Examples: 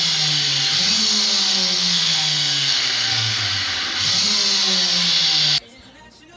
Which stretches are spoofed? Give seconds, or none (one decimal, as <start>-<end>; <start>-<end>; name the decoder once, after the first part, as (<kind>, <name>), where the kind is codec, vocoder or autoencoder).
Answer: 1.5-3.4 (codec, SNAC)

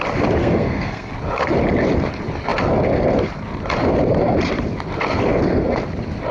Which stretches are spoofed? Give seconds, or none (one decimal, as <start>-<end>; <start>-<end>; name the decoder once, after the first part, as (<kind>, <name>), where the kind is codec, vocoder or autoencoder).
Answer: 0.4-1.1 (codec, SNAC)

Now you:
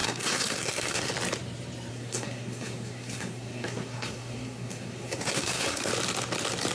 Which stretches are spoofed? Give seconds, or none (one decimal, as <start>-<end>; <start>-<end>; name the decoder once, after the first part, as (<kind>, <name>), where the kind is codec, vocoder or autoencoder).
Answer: 0.0-1.1 (codec, SNAC); 1.9-5.9

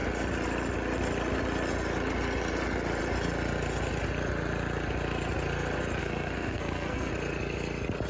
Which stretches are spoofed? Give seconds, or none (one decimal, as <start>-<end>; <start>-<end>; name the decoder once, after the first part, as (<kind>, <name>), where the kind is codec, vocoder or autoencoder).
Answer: 6.0-7.1 (codec, SNAC)

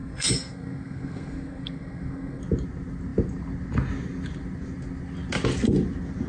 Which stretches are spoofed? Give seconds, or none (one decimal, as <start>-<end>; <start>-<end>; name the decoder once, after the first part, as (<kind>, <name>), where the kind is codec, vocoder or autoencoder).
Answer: 0.0-2.4 (codec, SNAC)

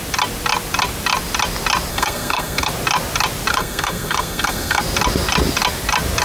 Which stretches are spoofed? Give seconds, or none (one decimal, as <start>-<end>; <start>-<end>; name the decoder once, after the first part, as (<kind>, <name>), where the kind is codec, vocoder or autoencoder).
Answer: 1.9-2.7 (codec, SNAC); 3.5-4.8